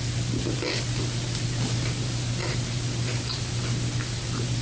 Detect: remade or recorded recorded